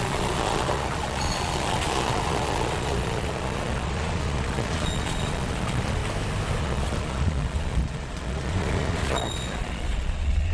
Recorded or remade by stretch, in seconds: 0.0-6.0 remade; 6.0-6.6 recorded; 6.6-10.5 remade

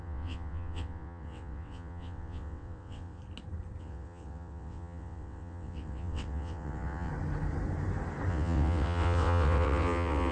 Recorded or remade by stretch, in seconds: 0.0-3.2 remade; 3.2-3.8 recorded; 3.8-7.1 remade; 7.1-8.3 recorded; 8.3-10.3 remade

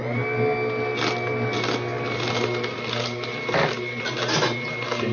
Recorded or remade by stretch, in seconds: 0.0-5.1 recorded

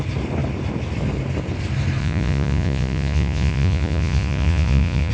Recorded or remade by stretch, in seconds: 0.0-2.0 recorded; 2.0-5.1 remade

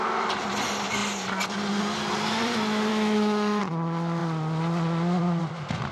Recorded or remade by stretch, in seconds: 0.0-2.9 recorded; 2.9-3.6 remade; 3.6-5.9 recorded

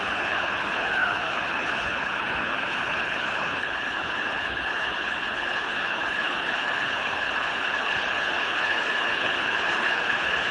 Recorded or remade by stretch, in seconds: 0.0-10.5 remade

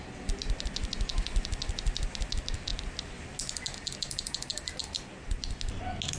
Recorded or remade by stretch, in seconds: 0.0-6.2 recorded

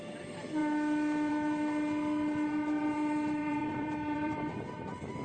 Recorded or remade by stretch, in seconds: 0.0-3.4 recorded; 3.4-4.5 remade; 4.5-5.2 recorded